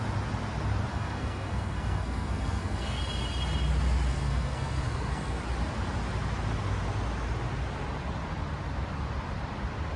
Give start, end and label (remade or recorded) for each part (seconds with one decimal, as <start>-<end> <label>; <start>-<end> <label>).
0.0-0.9 recorded; 0.9-3.0 remade; 3.0-4.1 recorded; 4.1-5.4 remade; 5.4-10.0 recorded